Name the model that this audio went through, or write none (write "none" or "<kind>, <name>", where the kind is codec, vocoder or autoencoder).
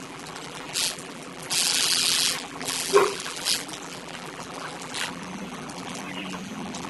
vocoder, BigVGAN v2